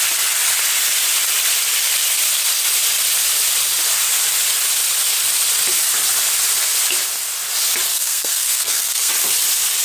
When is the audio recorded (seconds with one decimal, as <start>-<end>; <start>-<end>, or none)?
0.0-7.9; 9.1-9.8